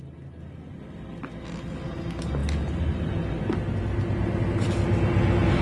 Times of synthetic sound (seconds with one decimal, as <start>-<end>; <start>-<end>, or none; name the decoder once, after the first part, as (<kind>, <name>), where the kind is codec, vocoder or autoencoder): none